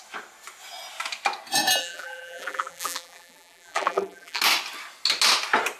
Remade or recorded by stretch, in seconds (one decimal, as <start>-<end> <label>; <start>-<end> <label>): 0.0-1.8 recorded; 1.8-4.4 remade; 4.4-5.8 recorded